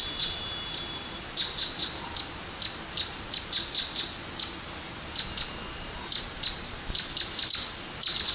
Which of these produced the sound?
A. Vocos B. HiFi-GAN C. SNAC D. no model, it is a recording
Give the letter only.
D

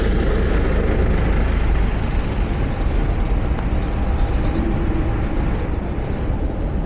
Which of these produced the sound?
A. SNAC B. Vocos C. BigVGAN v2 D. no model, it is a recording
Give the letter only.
D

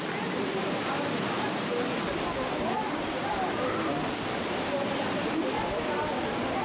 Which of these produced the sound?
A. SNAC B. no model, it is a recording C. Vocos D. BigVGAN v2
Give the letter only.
B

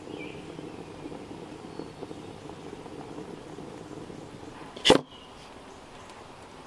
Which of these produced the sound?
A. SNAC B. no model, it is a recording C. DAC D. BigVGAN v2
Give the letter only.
B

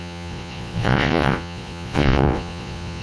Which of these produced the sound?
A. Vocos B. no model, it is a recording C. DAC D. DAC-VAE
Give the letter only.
A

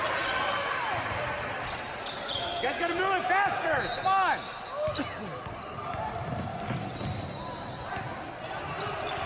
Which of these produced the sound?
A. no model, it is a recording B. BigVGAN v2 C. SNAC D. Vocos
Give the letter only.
A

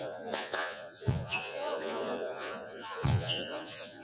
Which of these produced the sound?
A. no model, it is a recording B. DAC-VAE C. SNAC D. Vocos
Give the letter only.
D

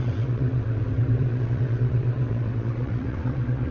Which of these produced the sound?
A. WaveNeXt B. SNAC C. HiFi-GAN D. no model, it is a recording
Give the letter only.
A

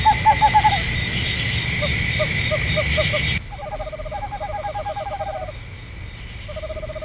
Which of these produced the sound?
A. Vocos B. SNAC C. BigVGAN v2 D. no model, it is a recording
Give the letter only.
D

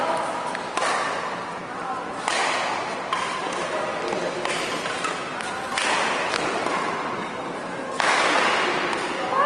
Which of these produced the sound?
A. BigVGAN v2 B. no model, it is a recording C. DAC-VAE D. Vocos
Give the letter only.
B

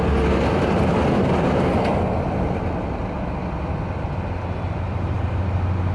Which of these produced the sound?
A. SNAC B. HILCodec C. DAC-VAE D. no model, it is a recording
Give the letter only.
D